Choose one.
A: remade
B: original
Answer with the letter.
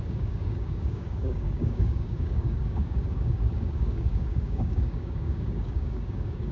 A